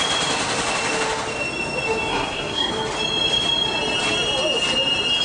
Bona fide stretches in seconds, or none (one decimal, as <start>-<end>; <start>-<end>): 0.0-2.1; 2.7-5.2